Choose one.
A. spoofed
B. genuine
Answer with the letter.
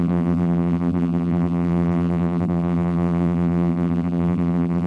A